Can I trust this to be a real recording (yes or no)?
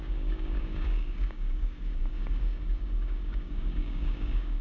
no